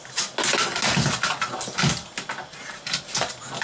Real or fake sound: real